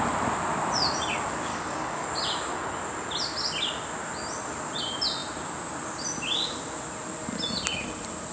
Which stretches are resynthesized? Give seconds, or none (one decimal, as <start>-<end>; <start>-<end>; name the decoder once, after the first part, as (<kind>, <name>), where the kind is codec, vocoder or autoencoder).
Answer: 1.5-2.1 (codec, DAC)